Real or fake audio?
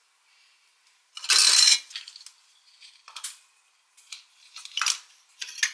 real